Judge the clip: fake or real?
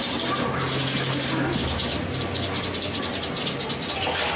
real